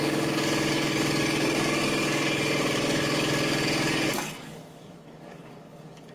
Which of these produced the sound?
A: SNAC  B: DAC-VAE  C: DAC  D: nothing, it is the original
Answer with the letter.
C